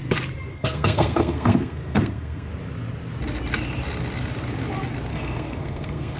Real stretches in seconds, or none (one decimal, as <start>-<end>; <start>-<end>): 0.0-0.5; 2.5-5.1